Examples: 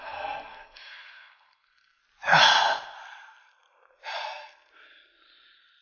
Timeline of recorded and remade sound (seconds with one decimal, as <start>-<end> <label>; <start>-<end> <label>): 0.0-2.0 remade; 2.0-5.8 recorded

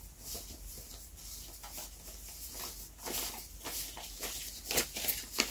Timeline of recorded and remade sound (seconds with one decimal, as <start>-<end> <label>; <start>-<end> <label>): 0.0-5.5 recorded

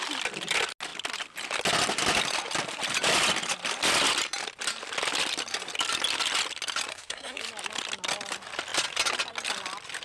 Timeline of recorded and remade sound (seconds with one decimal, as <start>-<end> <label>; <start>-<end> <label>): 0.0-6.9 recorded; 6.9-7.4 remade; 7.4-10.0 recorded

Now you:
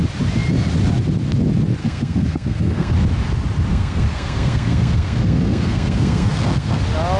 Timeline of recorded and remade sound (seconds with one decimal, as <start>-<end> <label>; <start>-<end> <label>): 0.0-1.8 recorded; 1.8-2.9 remade; 2.9-3.7 recorded; 3.7-6.8 remade; 6.8-7.2 recorded

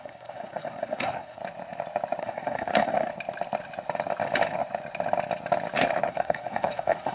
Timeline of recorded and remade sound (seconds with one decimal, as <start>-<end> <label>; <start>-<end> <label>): 0.0-1.4 remade; 1.4-2.2 recorded; 2.2-3.1 remade; 3.1-6.1 recorded; 6.1-7.1 remade

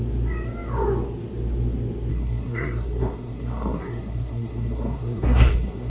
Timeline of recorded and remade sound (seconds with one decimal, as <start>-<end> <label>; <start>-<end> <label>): 0.0-2.1 recorded; 2.1-5.9 remade

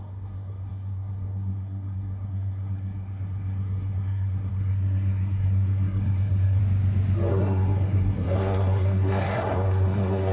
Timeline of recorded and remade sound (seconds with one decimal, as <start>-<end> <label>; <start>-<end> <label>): 0.0-6.6 remade; 6.6-7.3 recorded; 7.3-10.3 remade